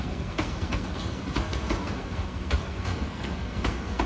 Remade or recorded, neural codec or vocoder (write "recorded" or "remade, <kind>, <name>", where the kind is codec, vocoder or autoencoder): remade, codec, SNAC